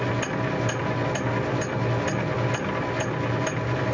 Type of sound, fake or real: real